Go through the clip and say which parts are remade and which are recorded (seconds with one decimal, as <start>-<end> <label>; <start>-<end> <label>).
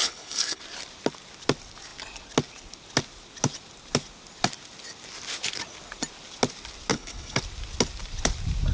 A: 0.0-0.6 remade; 0.6-6.9 recorded; 6.9-7.4 remade; 7.4-8.7 recorded